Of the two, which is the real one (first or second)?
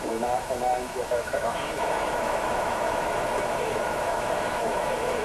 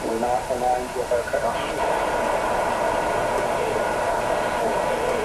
second